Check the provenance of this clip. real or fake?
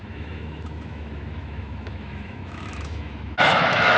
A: fake